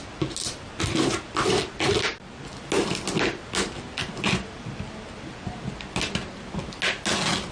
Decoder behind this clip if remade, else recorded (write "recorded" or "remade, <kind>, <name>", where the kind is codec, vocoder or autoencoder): recorded